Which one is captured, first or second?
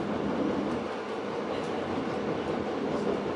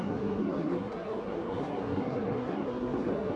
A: first